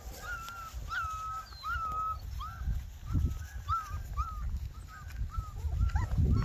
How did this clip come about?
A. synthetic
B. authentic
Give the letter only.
B